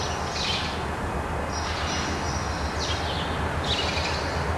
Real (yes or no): yes